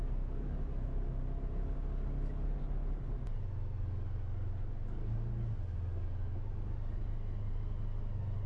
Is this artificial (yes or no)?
no